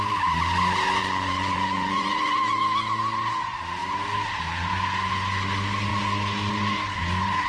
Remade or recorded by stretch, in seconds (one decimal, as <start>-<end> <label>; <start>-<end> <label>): 0.0-1.0 recorded; 1.0-2.6 remade; 2.6-7.5 recorded